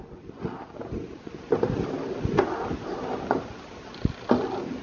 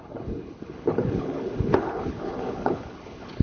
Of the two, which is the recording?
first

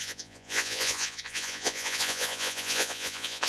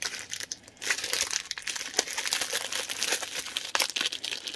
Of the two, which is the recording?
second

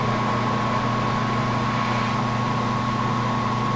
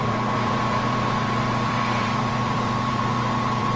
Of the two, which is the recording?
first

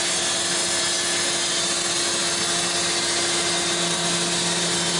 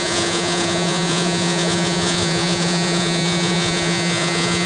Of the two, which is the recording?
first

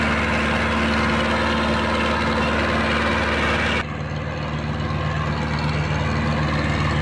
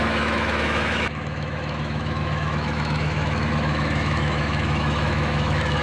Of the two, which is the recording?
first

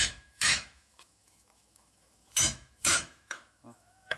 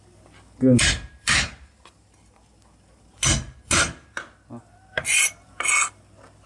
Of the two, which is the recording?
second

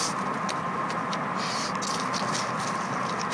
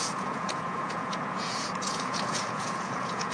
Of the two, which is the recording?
first